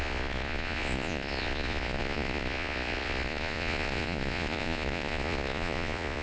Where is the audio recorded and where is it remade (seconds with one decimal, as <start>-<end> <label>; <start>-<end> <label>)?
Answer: 0.0-6.2 remade